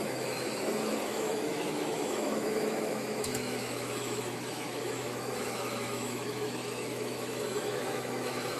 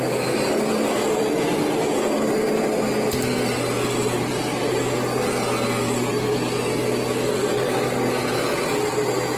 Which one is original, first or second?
second